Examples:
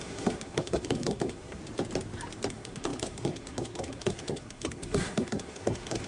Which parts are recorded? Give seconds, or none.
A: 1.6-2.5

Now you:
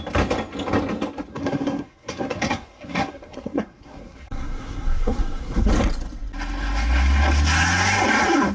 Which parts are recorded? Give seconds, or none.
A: 0.0-1.3; 5.7-8.5

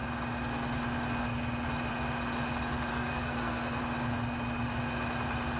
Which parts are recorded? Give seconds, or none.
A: 0.0-2.9; 3.8-5.6

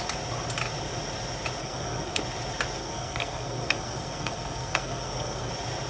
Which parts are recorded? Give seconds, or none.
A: 0.0-1.6; 2.2-2.8; 5.5-5.9

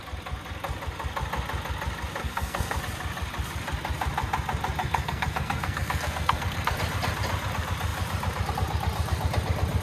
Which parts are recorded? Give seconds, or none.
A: 0.0-2.2; 2.8-4.8; 6.8-9.8